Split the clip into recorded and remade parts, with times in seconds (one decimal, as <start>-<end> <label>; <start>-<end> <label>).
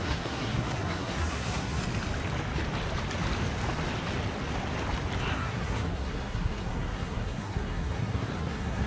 0.0-1.8 remade; 1.8-5.3 recorded; 5.3-8.9 remade